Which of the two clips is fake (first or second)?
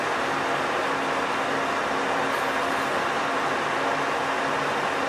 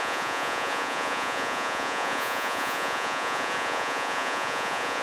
second